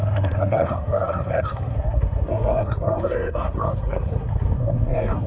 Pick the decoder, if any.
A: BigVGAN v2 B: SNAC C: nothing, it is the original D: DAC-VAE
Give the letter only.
B